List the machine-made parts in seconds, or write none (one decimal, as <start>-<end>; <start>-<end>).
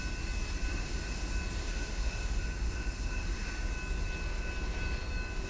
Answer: 0.7-1.2; 1.6-3.5